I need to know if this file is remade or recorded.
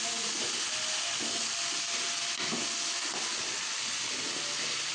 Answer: recorded